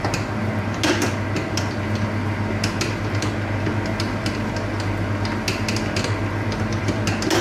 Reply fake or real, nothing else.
real